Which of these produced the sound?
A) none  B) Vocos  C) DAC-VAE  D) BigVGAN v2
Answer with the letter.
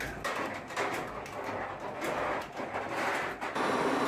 A